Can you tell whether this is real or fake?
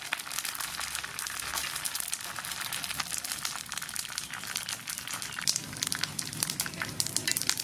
real